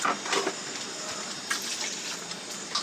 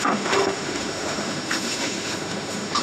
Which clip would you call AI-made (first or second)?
second